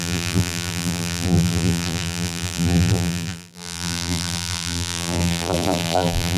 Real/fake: fake